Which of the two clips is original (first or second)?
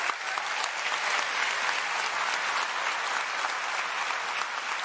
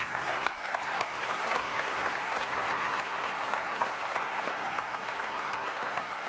first